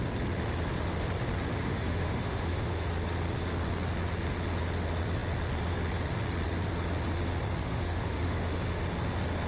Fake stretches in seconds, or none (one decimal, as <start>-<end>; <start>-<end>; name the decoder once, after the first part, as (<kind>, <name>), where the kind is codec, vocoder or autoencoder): 1.6-2.9 (autoencoder, DAC-VAE); 7.6-8.8